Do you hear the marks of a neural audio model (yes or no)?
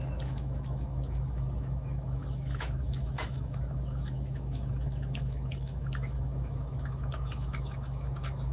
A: yes